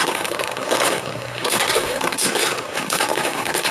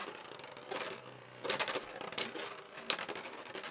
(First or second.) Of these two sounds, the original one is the second